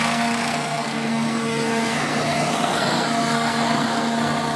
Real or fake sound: fake